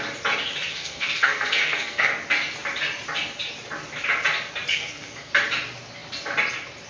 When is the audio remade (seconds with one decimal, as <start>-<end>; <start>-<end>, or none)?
0.7-2.1; 4.7-5.3